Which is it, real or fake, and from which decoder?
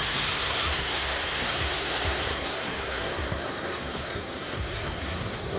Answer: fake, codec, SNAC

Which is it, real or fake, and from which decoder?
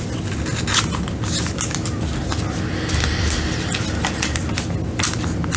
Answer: real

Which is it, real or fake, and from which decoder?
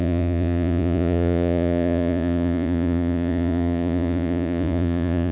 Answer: fake, vocoder, Vocos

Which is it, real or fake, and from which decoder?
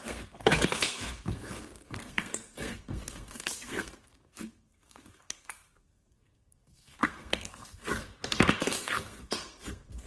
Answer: fake, codec, SNAC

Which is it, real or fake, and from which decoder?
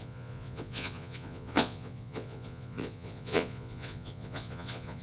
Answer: fake, vocoder, Vocos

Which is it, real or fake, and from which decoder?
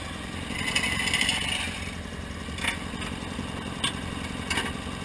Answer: real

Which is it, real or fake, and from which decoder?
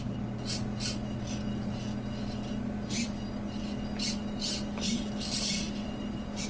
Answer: real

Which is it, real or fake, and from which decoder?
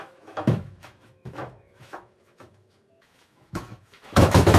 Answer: fake, autoencoder, DAC-VAE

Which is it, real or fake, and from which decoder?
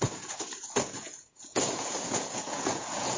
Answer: fake, vocoder, Vocos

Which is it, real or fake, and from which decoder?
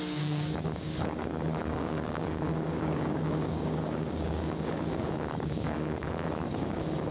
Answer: fake, codec, DAC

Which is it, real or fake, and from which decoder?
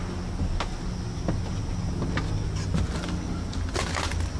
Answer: real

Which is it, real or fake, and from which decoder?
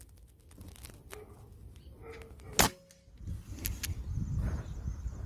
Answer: real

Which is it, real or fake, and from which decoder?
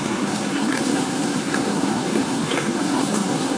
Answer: fake, codec, SNAC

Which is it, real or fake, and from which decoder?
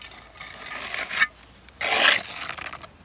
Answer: real